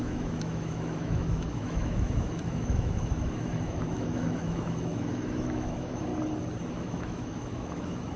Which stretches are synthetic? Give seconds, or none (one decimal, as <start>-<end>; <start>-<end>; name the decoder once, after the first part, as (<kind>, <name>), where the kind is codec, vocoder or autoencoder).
0.0-6.1 (autoencoder, DAC-VAE); 6.7-8.2